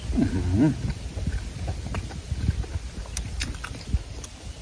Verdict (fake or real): real